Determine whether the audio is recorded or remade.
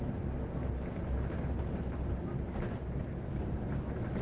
recorded